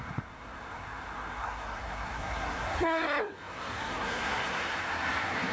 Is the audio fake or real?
fake